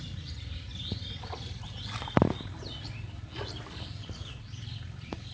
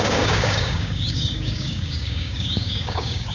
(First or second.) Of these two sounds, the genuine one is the first